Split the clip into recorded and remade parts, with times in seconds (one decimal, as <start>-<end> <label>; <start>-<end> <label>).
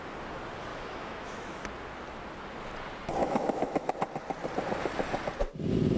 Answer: 0.0-0.7 recorded; 0.7-1.6 remade; 1.6-3.2 recorded; 3.2-3.9 remade; 3.9-6.0 recorded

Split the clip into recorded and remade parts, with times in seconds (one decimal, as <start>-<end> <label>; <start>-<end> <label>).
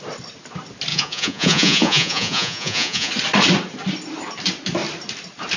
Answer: 0.0-0.9 recorded; 0.9-3.1 remade; 3.1-5.6 recorded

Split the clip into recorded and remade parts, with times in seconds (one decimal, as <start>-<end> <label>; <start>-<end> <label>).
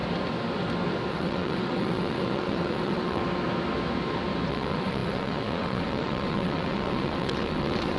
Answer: 0.0-1.1 recorded; 1.1-3.2 remade; 3.2-4.5 recorded; 4.5-8.0 remade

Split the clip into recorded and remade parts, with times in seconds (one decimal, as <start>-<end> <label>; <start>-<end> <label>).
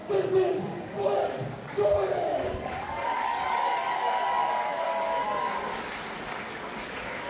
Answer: 0.0-5.7 remade; 5.7-6.3 recorded; 6.3-7.3 remade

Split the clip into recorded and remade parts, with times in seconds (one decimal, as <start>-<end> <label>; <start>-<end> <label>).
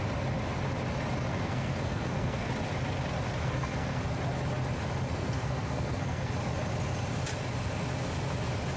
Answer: 0.0-1.3 recorded; 1.3-2.5 remade; 2.5-3.4 recorded; 3.4-4.0 remade; 4.0-5.1 recorded; 5.1-6.3 remade; 6.3-8.8 recorded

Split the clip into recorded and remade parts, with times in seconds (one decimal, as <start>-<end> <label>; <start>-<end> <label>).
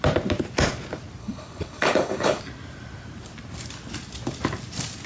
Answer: 0.0-1.2 recorded; 1.2-2.4 remade; 2.4-5.1 recorded